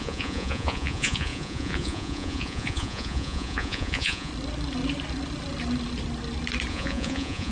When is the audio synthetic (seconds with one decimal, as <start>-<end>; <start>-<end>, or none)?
0.0-4.3; 6.7-7.5